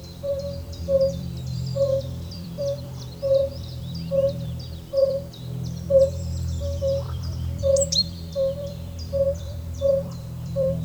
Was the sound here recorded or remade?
remade